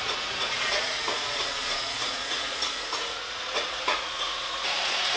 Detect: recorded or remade remade